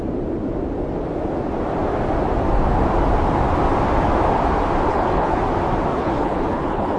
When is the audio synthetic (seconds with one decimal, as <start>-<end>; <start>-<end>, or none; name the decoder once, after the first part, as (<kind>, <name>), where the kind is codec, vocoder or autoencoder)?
4.9-5.4 (codec, HILCodec); 5.9-7.0